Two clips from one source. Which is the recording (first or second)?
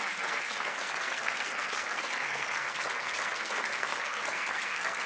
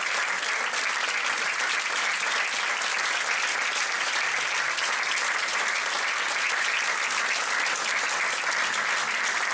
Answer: second